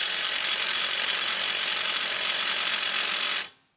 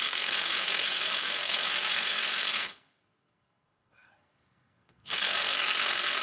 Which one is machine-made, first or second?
second